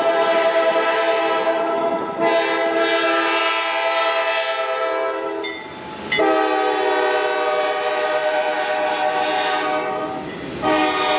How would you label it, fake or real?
real